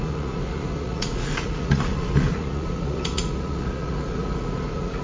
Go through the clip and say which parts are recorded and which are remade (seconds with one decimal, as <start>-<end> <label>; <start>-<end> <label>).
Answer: 0.0-5.0 remade